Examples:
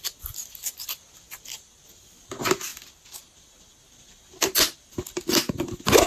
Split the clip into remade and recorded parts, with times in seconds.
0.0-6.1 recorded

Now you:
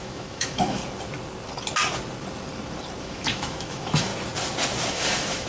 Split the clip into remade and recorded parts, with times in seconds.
0.0-0.8 remade; 0.8-3.0 recorded; 3.0-4.1 remade; 4.1-4.9 recorded; 4.9-5.5 remade

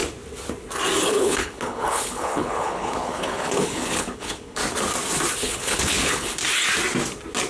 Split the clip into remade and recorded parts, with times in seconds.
0.0-1.0 recorded; 1.0-4.6 remade; 4.6-5.4 recorded; 5.4-6.4 remade; 6.4-7.5 recorded

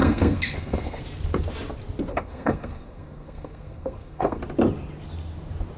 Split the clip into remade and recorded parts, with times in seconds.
0.0-1.0 remade; 1.0-2.1 recorded; 2.1-4.4 remade; 4.4-5.8 recorded

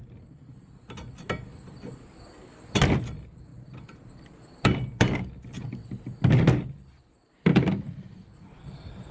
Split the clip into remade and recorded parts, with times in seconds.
0.0-9.1 recorded

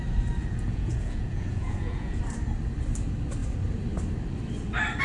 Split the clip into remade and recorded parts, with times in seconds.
0.0-0.4 recorded; 0.4-2.2 remade; 2.2-5.0 recorded

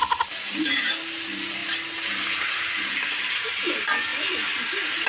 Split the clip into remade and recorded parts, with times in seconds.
0.0-1.6 remade; 1.6-2.5 recorded; 2.5-4.1 remade; 4.1-5.1 recorded

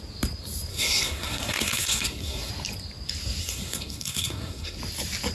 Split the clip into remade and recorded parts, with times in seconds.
0.0-0.7 recorded; 0.7-2.5 remade; 2.5-3.4 recorded; 3.4-4.8 remade; 4.8-5.3 recorded